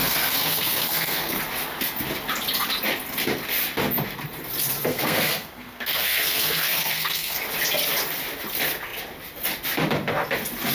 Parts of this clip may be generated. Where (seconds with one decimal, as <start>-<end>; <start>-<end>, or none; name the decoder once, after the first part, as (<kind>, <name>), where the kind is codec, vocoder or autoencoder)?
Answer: 0.0-1.4 (codec, SNAC); 4.9-7.4